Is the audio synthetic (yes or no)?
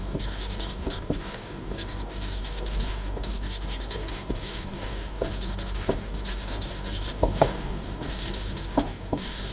yes